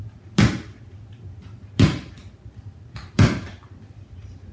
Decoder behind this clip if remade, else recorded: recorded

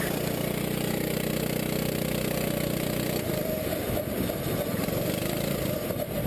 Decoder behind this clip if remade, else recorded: remade, vocoder, BigVGAN v2